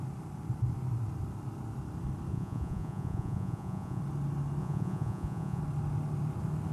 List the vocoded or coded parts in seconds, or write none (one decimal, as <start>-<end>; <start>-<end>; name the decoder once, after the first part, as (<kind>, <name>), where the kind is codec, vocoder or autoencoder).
2.3-4.0 (vocoder, Vocos); 4.6-5.6